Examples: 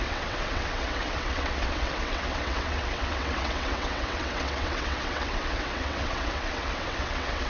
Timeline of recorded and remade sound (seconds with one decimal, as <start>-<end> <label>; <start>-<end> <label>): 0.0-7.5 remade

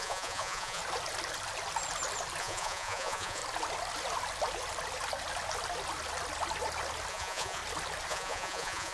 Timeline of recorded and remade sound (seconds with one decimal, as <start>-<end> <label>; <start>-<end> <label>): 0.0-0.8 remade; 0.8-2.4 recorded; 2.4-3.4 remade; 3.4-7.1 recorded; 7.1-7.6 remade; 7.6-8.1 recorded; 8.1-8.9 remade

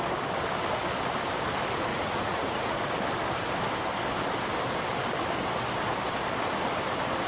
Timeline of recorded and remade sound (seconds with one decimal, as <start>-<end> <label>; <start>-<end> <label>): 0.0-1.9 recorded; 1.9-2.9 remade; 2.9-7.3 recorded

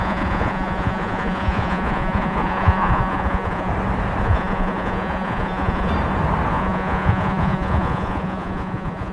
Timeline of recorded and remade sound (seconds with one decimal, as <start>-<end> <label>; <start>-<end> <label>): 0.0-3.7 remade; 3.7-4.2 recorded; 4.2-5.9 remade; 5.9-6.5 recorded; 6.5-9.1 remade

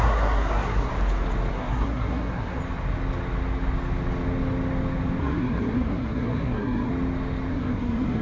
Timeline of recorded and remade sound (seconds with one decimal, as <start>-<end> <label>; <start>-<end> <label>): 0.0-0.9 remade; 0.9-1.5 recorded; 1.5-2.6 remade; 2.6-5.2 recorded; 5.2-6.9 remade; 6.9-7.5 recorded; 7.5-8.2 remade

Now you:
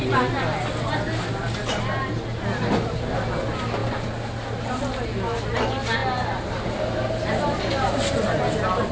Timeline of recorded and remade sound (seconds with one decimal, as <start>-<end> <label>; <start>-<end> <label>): 0.0-8.9 recorded